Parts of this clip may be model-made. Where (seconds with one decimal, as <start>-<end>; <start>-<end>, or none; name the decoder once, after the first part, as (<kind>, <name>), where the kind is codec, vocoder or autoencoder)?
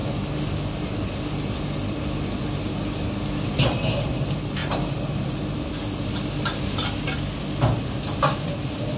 none